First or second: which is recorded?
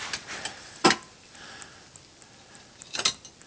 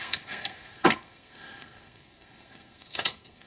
first